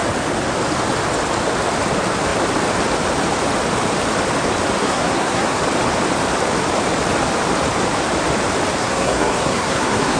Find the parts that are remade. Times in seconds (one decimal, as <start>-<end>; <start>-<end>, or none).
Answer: 4.8-5.6; 8.8-10.2